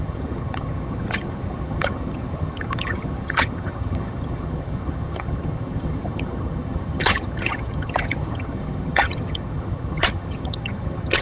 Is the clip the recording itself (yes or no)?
no